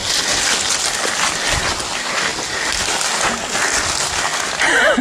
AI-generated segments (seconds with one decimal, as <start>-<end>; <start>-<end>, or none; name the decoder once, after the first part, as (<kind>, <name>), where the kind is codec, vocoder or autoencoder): none